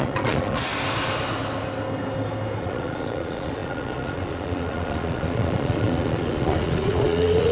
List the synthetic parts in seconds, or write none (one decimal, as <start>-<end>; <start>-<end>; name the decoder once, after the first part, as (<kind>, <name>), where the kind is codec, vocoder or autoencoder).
0.0-0.7 (vocoder, Vocos); 2.6-7.5